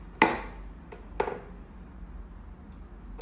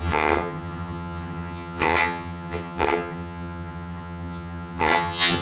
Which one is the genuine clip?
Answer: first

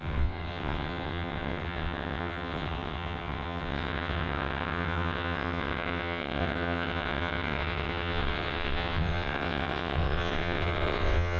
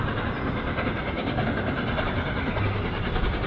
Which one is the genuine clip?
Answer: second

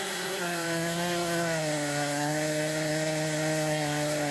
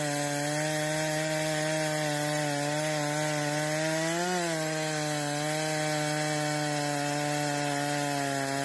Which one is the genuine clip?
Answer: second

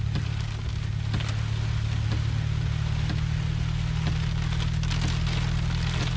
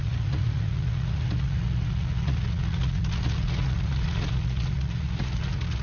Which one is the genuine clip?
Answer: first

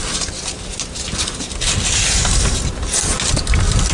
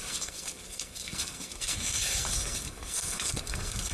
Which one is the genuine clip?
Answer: first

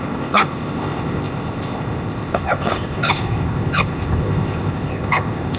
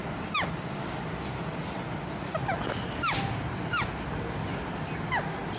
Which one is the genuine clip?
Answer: second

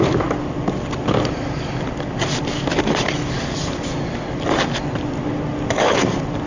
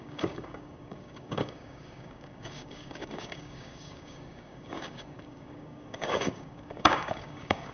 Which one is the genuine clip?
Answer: first